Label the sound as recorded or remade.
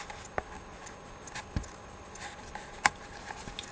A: recorded